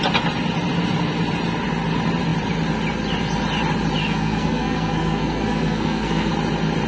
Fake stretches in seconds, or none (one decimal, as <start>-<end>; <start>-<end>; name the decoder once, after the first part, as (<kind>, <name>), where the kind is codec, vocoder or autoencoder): 4.0-6.3 (codec, SNAC)